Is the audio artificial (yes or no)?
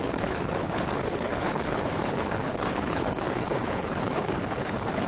yes